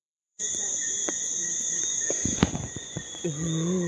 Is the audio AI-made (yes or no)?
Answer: yes